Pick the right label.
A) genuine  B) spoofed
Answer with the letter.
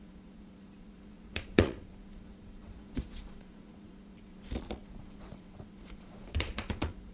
B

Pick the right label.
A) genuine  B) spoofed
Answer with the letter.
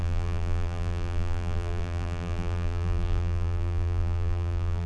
B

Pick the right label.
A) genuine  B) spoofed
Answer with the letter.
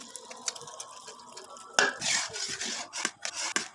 A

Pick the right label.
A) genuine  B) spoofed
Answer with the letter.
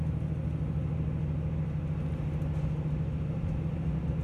A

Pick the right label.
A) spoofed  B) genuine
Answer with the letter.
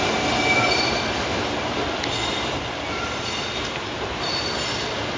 B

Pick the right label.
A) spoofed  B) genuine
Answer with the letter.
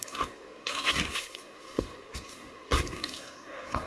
A